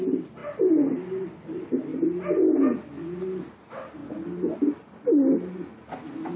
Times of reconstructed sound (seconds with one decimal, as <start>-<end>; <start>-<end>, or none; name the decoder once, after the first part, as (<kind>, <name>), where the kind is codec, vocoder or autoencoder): none